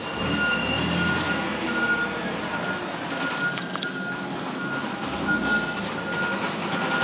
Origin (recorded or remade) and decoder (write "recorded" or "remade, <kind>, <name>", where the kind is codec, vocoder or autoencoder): recorded